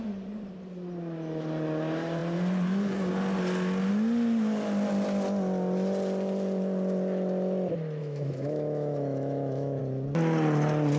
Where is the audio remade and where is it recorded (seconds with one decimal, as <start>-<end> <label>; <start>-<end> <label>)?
0.0-8.0 recorded; 8.0-9.8 remade; 9.8-11.0 recorded